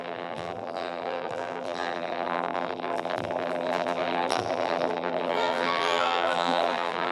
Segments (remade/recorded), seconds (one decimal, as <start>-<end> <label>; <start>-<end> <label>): 0.0-7.1 remade